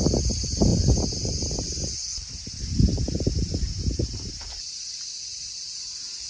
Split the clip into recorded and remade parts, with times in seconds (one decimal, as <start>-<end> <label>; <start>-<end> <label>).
0.0-0.7 recorded; 0.7-1.7 remade; 1.7-2.1 recorded; 2.1-4.3 remade; 4.3-6.3 recorded